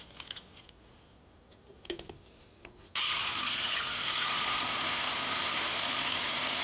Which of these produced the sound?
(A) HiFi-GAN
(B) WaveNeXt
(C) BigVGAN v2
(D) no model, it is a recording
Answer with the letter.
D